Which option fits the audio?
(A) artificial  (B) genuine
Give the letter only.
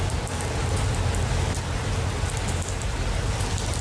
B